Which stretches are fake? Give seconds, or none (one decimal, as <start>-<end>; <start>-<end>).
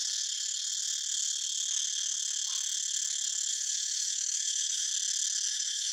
3.5-4.9; 5.5-5.9